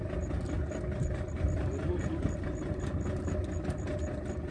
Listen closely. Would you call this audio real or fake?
real